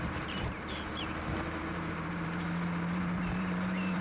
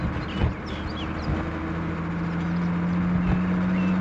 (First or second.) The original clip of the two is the second